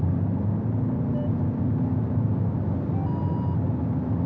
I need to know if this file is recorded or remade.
recorded